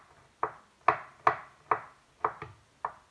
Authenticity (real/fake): real